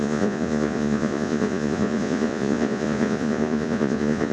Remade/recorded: remade